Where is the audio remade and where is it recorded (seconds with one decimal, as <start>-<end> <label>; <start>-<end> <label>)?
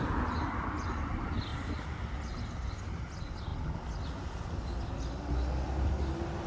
0.0-6.5 recorded